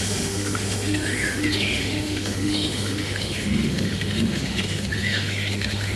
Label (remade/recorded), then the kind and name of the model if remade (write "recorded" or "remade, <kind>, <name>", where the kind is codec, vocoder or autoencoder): remade, autoencoder, DAC-VAE